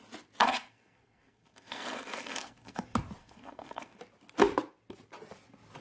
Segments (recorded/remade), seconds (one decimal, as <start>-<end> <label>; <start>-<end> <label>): 0.0-0.4 recorded; 0.4-2.8 remade; 2.8-3.2 recorded; 3.2-4.0 remade; 4.0-5.8 recorded